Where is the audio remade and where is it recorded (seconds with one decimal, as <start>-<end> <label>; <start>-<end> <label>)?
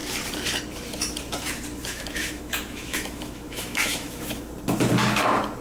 0.0-1.8 recorded; 1.8-4.5 remade; 4.5-5.6 recorded